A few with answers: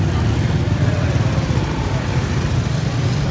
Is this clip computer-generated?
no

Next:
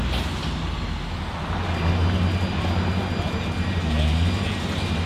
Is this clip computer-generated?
no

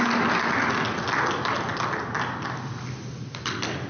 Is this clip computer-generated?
no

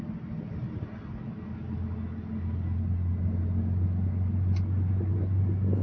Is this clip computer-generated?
no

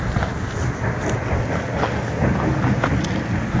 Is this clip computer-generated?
no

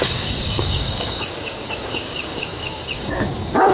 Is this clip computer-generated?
yes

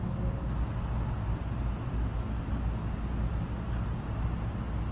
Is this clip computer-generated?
no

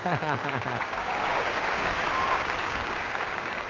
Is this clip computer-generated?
yes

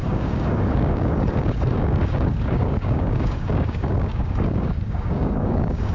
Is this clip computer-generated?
yes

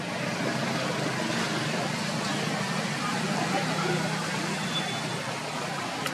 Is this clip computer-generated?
no